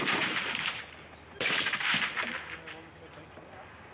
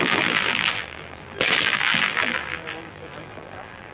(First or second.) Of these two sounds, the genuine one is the first